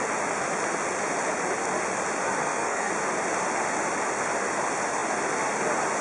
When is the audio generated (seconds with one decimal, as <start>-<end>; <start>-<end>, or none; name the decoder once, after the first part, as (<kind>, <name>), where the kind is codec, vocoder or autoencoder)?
2.4-2.9 (codec, SNAC)